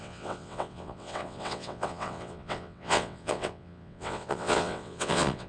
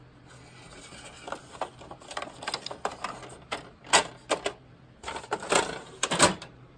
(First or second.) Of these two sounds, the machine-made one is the first